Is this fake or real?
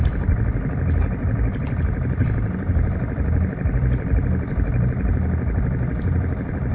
fake